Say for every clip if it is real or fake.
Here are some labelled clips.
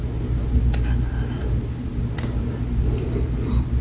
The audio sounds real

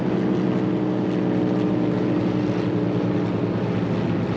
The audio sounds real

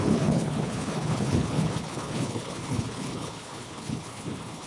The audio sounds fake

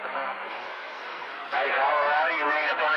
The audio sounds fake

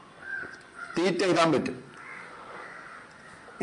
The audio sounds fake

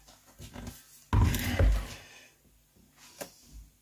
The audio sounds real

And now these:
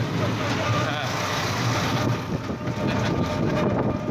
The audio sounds real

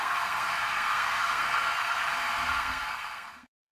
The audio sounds fake